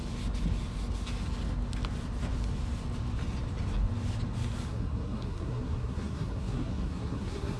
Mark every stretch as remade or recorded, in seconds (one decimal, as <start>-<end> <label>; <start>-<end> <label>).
0.0-4.7 recorded; 4.7-7.6 remade